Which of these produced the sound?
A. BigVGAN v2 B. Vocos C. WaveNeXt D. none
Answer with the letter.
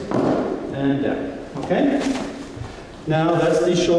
A